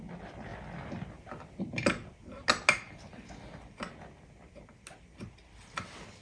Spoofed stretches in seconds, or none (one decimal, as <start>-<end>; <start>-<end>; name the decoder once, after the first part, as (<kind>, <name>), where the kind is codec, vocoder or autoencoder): none